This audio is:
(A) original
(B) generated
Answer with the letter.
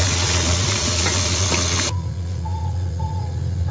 B